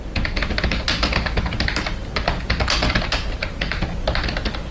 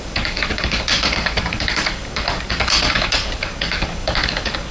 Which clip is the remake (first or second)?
second